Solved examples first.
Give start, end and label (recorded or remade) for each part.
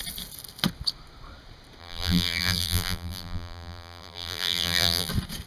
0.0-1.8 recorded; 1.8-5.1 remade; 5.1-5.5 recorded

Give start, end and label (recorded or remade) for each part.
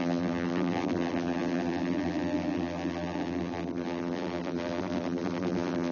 0.0-5.9 remade